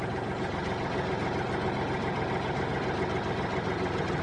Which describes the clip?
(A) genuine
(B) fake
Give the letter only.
A